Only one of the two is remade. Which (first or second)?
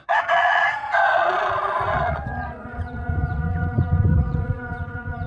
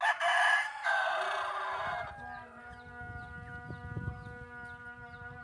first